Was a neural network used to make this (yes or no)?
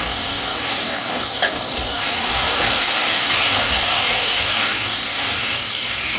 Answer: yes